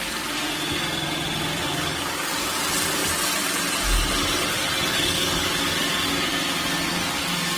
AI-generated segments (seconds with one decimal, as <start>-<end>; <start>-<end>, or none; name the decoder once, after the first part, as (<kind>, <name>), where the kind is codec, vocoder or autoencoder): 1.7-2.4 (codec, DAC); 4.9-5.6